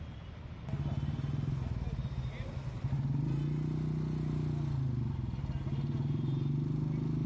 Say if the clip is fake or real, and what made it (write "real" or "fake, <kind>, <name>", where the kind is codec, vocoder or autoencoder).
real